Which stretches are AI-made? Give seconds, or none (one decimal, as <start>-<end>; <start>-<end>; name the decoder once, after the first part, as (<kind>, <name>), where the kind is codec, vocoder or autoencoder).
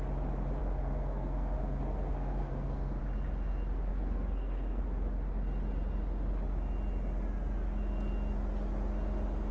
0.6-3.0 (codec, SNAC); 3.9-4.8